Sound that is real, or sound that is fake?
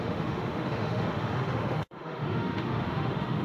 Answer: fake